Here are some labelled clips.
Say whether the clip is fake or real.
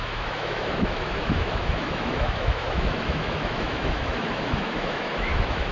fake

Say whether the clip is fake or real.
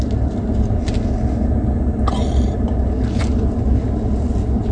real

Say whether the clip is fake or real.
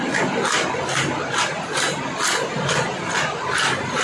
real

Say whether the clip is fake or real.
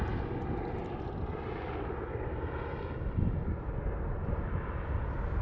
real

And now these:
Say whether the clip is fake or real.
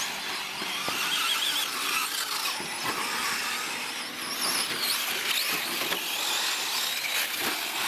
real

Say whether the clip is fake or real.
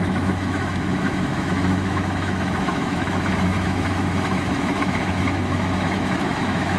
fake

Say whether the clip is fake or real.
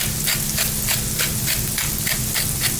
real